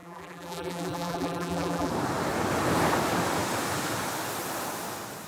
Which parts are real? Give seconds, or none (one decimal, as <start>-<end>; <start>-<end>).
1.9-5.3

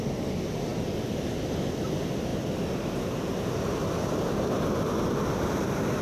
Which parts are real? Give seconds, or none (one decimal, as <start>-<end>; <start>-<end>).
0.0-6.0

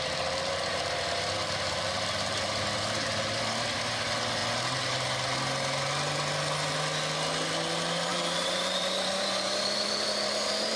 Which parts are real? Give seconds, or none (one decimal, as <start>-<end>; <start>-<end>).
0.0-0.7; 3.4-8.1